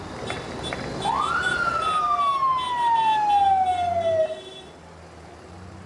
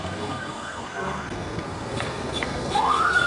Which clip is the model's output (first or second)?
second